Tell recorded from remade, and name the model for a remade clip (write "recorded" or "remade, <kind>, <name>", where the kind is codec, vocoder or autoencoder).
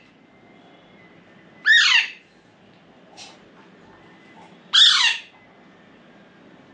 recorded